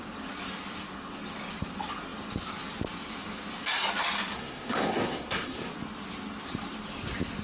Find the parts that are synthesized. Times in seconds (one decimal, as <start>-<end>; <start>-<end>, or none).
4.3-5.7